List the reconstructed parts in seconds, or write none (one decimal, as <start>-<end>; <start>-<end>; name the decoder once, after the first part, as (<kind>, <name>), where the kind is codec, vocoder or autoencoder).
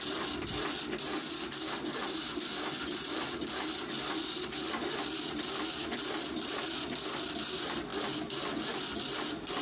3.1-3.9 (vocoder, BigVGAN v2)